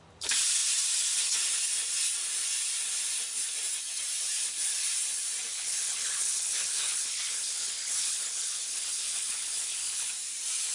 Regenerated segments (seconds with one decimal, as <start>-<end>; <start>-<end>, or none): 5.5-10.1